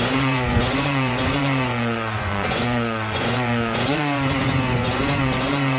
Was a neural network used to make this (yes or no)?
yes